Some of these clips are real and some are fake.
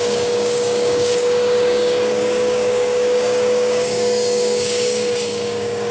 fake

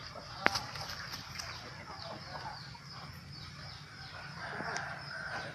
real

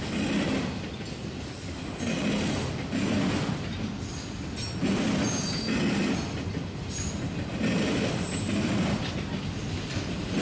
real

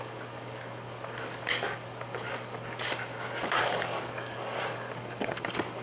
fake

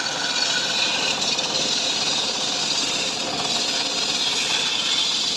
real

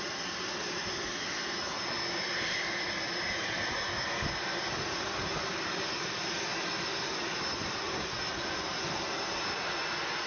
real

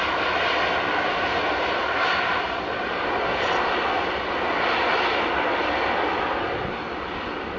real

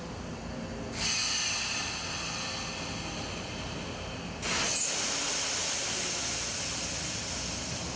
real